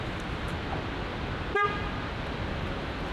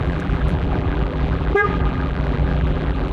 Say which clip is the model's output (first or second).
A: second